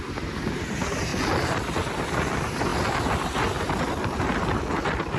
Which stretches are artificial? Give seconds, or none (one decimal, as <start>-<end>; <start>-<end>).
none